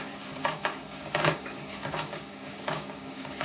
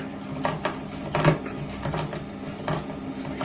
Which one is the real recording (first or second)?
second